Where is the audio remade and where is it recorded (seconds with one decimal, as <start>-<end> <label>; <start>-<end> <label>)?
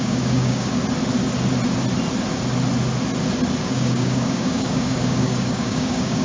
0.0-0.8 remade; 0.8-3.6 recorded; 3.6-6.2 remade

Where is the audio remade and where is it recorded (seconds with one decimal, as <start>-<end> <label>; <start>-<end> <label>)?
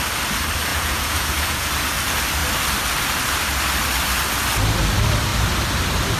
0.0-0.7 recorded; 0.7-1.7 remade; 1.7-6.2 recorded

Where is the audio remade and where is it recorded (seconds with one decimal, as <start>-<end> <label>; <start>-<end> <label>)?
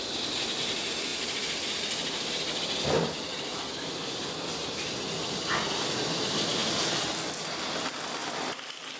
0.0-9.0 recorded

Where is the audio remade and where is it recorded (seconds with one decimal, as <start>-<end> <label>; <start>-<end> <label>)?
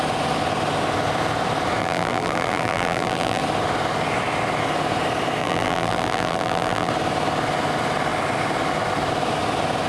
0.0-1.8 recorded; 1.8-3.4 remade; 3.4-5.4 recorded; 5.4-6.9 remade; 6.9-9.9 recorded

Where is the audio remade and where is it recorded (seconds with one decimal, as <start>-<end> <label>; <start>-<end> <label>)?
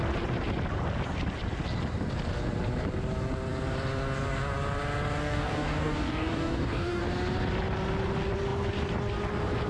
0.0-5.2 recorded; 5.2-7.0 remade; 7.0-9.7 recorded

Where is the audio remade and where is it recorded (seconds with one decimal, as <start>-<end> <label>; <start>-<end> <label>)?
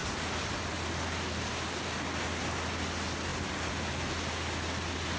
0.0-5.2 recorded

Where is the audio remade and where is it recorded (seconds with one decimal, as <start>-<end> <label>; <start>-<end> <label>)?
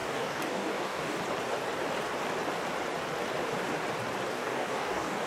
0.0-1.2 remade; 1.2-4.3 recorded; 4.3-5.3 remade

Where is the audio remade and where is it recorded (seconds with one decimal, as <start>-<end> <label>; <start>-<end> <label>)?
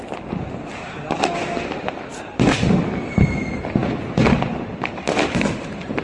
0.0-3.8 recorded; 3.8-4.7 remade; 4.7-6.0 recorded